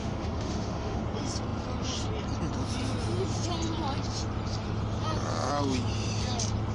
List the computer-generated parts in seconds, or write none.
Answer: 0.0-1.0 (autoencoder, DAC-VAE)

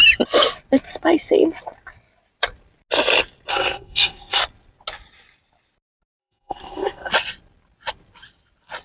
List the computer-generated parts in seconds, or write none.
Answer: 3.5-4.4 (codec, SNAC); 6.2-7.1

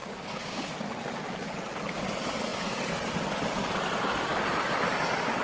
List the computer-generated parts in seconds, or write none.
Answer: 0.0-0.7 (codec, DAC)

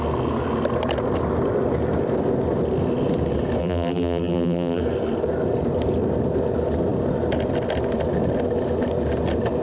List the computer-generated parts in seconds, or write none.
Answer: 3.6-4.8 (vocoder, BigVGAN v2)